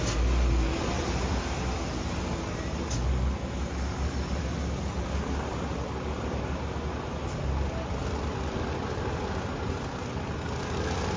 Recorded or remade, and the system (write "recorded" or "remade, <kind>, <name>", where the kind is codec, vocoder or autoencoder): recorded